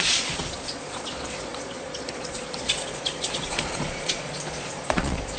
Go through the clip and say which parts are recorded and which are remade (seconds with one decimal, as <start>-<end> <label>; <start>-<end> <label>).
0.0-5.4 remade